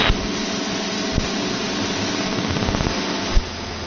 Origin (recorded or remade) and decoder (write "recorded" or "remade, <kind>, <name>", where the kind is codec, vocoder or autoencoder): recorded